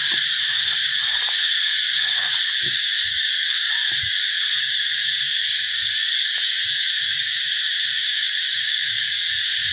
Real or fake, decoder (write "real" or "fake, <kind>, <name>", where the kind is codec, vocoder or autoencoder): fake, codec, DAC